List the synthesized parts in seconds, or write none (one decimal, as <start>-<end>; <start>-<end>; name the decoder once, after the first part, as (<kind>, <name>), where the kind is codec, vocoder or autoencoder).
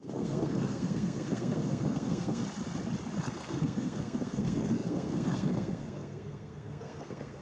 0.0-2.4 (codec, SNAC); 3.3-7.4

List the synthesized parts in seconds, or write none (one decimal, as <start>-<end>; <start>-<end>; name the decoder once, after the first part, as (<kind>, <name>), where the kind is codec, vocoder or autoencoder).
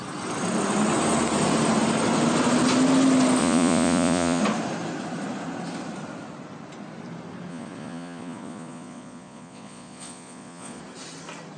3.4-4.4 (vocoder, Vocos); 7.5-10.8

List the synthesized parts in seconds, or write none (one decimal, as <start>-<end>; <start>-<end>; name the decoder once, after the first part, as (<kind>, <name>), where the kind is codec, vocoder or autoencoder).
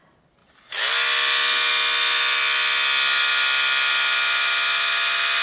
none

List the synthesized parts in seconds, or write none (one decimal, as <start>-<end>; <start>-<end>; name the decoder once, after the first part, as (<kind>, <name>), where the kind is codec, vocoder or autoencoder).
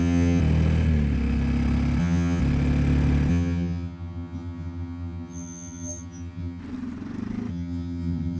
0.0-0.4 (vocoder, HiFi-GAN); 2.0-2.4; 3.3-6.6; 7.5-8.4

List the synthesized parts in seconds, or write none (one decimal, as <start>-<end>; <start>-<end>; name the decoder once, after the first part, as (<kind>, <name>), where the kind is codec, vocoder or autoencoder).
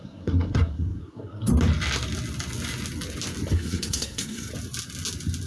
0.0-1.5 (codec, SNAC); 3.5-4.5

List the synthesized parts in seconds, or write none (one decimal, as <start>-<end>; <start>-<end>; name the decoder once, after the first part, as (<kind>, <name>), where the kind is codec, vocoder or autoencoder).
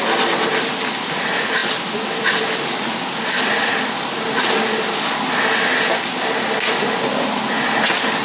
none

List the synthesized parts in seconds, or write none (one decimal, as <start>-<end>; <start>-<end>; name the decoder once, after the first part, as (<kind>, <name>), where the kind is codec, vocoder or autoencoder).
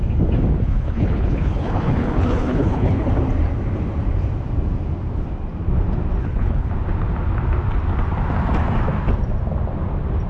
0.5-3.1 (codec, HILCodec); 6.2-6.7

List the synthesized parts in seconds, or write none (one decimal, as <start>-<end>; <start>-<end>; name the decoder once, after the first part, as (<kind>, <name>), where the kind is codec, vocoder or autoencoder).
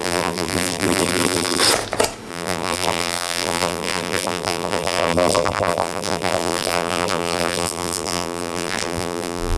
0.0-1.6 (vocoder, BigVGAN v2); 2.3-9.6